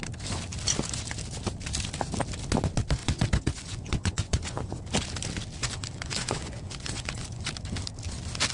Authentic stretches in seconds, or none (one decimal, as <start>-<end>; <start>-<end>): 0.0-3.0; 4.8-5.6; 7.5-8.5